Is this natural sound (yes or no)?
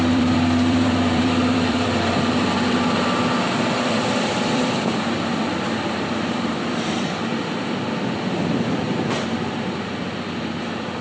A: no